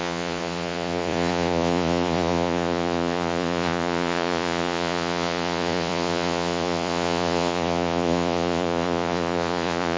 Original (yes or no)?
no